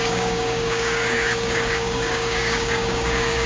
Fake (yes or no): yes